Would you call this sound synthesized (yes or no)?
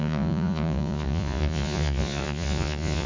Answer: yes